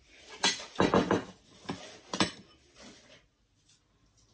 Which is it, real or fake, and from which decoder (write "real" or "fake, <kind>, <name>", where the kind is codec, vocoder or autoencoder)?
real